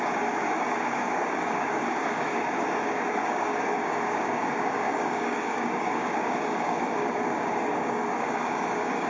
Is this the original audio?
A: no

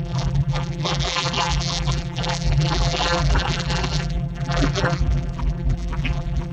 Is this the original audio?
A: no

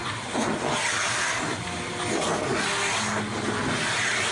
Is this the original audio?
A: yes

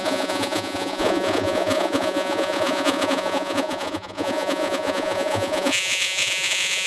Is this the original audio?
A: no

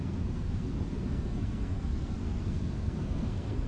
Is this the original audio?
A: no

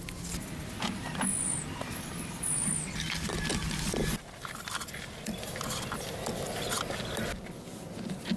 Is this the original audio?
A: yes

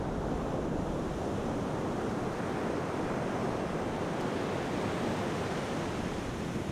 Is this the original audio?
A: yes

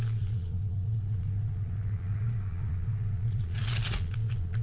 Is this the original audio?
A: no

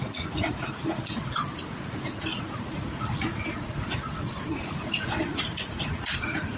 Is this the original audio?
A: no